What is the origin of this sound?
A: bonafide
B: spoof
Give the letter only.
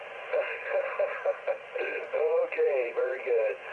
B